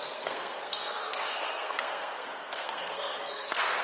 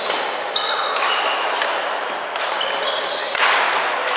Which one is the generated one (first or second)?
first